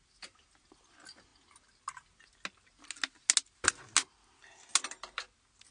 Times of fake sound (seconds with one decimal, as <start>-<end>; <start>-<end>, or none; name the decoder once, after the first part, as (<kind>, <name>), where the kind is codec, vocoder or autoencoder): none